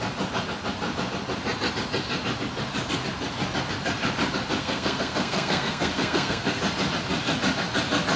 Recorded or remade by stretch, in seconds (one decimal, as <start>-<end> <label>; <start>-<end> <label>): 0.0-4.6 recorded; 4.6-6.6 remade; 6.6-8.2 recorded